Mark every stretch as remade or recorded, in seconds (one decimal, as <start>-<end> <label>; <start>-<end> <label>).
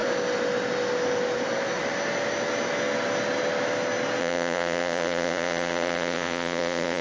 0.0-4.2 recorded; 4.2-7.0 remade